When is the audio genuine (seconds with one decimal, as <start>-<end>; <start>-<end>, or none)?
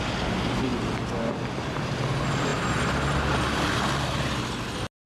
0.0-5.1